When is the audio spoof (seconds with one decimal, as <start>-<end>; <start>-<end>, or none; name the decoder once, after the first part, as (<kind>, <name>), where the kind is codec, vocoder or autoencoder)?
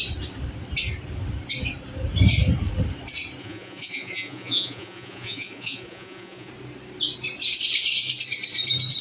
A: 3.4-6.5 (vocoder, Vocos)